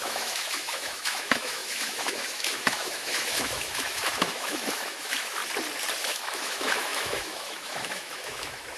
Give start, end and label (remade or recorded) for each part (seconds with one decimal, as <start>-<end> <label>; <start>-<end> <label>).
0.0-5.4 remade; 5.4-6.0 recorded; 6.0-8.8 remade